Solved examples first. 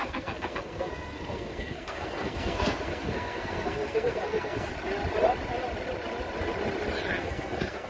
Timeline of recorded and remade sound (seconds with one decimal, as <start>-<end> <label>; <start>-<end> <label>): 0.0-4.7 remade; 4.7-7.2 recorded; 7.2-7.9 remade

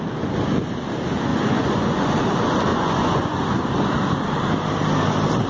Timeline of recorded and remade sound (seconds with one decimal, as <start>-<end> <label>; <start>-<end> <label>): 0.0-1.3 recorded; 1.3-2.2 remade; 2.2-2.7 recorded; 2.7-3.4 remade; 3.4-5.5 recorded

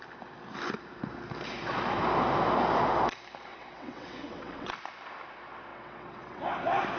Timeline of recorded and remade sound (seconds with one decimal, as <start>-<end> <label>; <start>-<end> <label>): 0.0-3.5 recorded; 3.5-4.7 remade; 4.7-5.7 recorded; 5.7-6.4 remade; 6.4-7.0 recorded

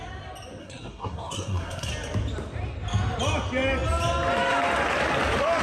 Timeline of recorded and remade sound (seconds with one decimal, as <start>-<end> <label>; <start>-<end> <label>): 0.0-0.6 recorded; 0.6-1.9 remade; 1.9-5.6 recorded

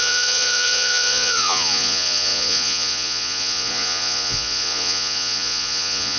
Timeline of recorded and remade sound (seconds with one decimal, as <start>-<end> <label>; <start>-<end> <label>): 0.0-6.2 remade

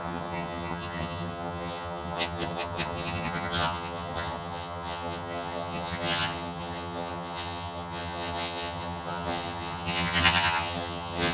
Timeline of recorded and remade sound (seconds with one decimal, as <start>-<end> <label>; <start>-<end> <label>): 0.0-11.3 remade